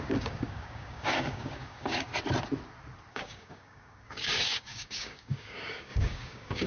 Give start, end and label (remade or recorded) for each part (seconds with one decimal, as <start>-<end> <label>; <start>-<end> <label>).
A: 0.0-2.1 remade; 2.1-3.1 recorded; 3.1-6.7 remade